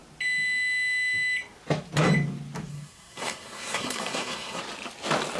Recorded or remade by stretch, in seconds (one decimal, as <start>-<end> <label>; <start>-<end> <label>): 0.0-2.7 recorded; 2.7-4.6 remade; 4.6-5.4 recorded